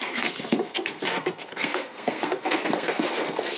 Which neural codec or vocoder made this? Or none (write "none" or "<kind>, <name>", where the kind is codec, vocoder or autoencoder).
codec, SNAC